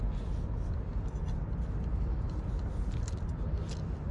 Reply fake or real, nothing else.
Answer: real